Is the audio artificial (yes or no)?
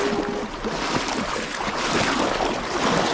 no